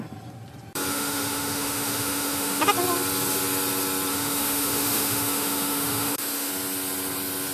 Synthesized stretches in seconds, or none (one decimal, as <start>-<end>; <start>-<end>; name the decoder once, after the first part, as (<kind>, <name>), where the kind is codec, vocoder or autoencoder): 0.9-2.6 (autoencoder, DAC-VAE); 4.1-6.5